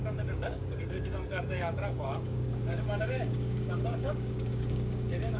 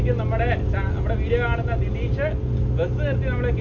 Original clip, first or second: second